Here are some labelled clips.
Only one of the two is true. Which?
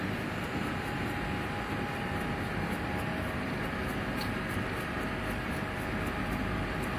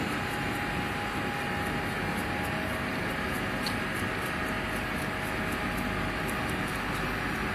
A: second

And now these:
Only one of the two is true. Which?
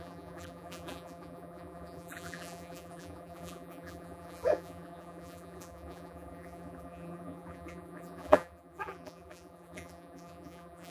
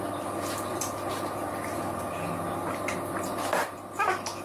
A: second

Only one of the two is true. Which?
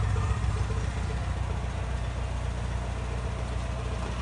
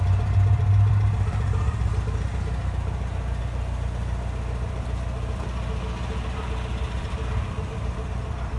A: first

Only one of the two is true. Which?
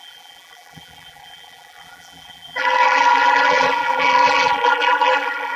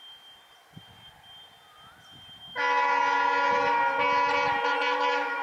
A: second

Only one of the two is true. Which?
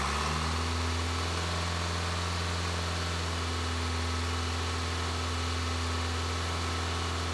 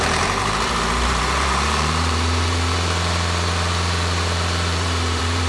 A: first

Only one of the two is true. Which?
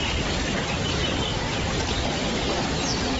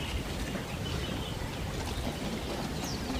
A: second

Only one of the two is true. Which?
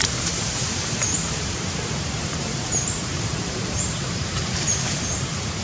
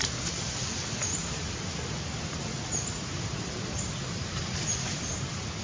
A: second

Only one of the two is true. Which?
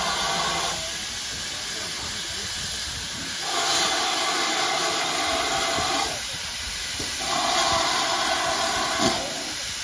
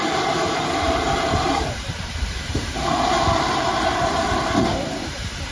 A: first